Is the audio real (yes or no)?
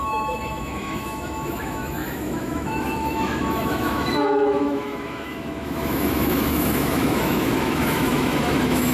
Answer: no